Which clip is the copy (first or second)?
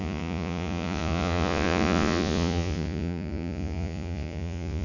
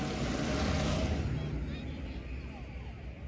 first